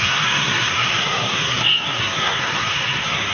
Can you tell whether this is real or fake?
fake